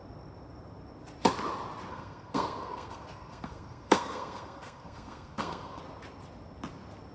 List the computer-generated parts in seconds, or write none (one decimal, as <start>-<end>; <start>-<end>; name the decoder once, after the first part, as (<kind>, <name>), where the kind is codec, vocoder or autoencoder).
1.9-5.8 (codec, SNAC)